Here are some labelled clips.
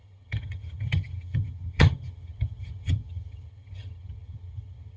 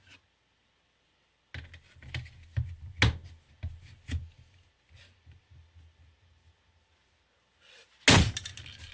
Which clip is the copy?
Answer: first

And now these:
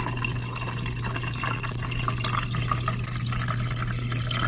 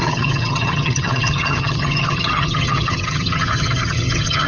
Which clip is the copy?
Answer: second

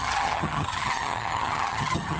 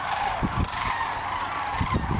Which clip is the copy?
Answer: first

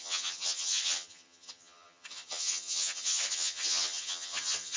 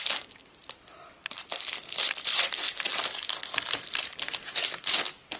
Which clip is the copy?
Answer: first